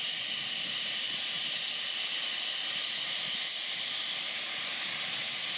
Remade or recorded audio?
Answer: recorded